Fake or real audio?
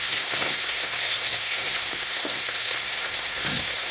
fake